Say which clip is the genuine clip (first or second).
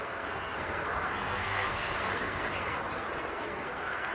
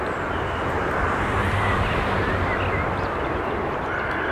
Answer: second